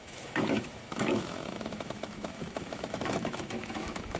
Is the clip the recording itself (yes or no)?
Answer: no